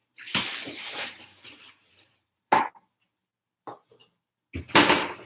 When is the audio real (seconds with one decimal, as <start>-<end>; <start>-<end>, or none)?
2.5-5.3